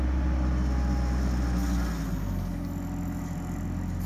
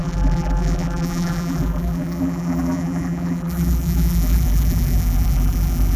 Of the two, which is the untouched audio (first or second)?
first